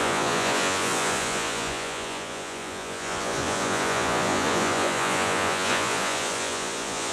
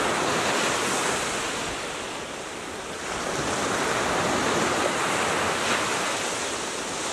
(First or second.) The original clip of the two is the second